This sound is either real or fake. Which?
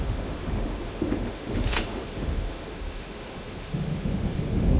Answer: fake